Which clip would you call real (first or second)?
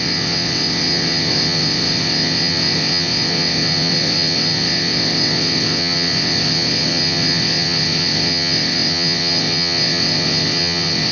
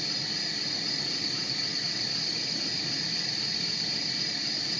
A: second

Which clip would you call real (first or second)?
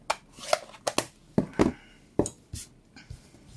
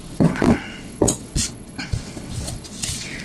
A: first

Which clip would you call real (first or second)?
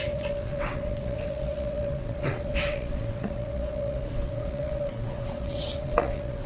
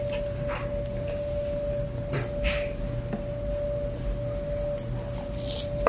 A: second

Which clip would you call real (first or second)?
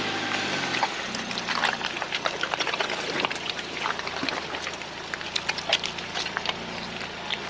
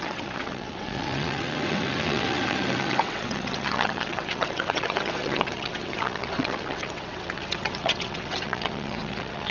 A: first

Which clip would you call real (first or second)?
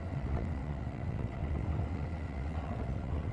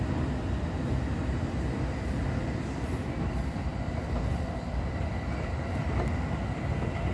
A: second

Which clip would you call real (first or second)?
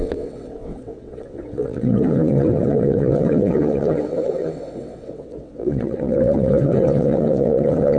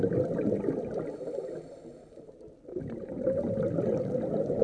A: second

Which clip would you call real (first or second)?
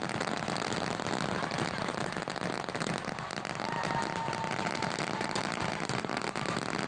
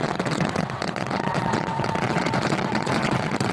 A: first